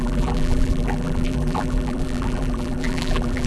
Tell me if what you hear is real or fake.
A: fake